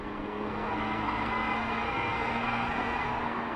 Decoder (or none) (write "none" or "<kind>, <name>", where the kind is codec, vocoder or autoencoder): codec, SNAC